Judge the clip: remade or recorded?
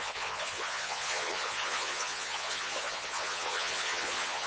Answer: remade